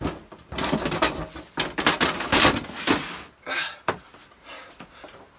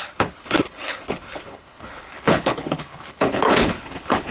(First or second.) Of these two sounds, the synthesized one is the second